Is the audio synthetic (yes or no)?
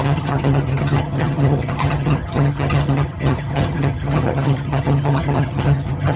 yes